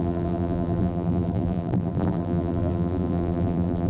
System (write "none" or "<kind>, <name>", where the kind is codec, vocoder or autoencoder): vocoder, BigVGAN v2